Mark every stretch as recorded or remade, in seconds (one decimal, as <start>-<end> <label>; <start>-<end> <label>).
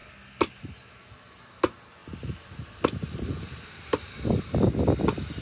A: 0.0-5.4 recorded